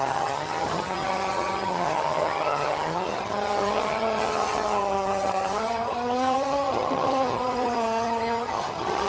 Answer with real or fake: fake